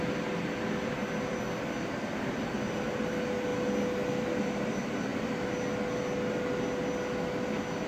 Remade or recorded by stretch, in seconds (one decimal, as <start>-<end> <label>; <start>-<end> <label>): 0.0-7.9 recorded

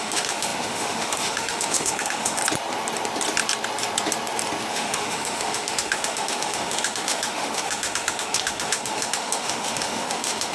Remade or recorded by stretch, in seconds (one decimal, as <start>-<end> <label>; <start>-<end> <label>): 0.0-2.4 remade; 2.4-4.7 recorded; 4.7-10.5 remade

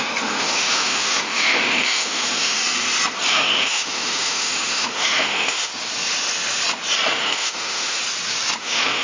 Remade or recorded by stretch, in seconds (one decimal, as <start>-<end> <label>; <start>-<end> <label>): 0.0-2.6 remade; 2.6-3.3 recorded; 3.3-5.7 remade; 5.7-7.2 recorded; 7.2-8.0 remade; 8.0-8.6 recorded; 8.6-9.0 remade

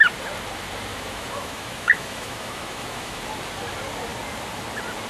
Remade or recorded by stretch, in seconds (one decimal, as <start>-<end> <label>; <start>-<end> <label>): 0.0-0.9 recorded; 0.9-3.2 remade; 3.2-5.1 recorded